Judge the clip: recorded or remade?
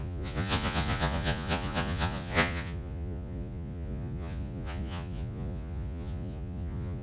remade